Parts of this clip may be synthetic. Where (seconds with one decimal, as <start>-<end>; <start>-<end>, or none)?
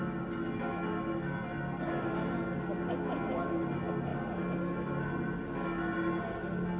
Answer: none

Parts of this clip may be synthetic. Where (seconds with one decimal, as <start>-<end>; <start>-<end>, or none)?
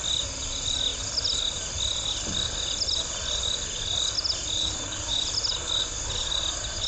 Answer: none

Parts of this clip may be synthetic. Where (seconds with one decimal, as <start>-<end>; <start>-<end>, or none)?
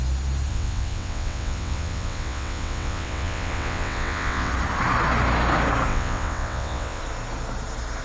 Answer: 0.5-4.5; 5.9-7.0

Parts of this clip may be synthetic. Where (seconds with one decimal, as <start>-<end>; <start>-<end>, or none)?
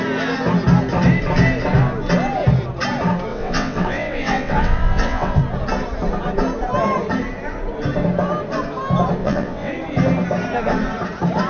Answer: 3.3-5.4; 9.2-9.7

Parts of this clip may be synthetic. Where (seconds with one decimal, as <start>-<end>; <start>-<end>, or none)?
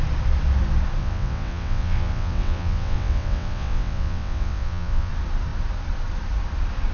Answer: 1.0-5.1